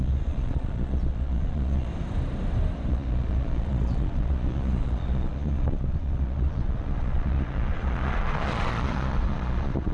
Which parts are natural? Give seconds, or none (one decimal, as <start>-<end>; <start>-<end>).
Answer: 1.9-2.9